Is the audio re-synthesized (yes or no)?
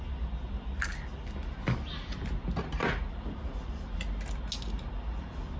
no